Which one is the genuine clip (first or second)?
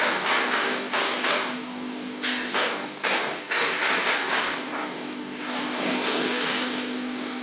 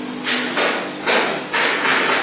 second